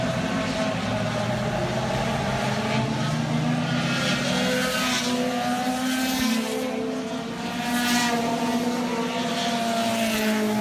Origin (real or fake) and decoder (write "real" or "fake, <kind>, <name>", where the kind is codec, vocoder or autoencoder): real